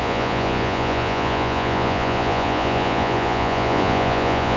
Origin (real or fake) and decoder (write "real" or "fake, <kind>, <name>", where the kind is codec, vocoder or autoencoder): fake, vocoder, Vocos